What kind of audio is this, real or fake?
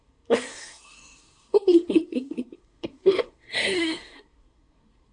fake